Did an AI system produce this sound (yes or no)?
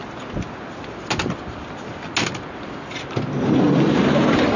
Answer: no